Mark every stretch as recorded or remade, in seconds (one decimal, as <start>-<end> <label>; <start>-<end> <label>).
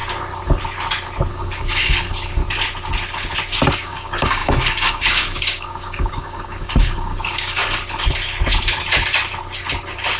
0.0-1.3 recorded; 1.3-2.4 remade; 2.4-3.7 recorded; 3.7-7.6 remade; 7.6-10.2 recorded